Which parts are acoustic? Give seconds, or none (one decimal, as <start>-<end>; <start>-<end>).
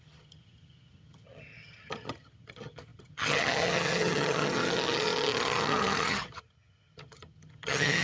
none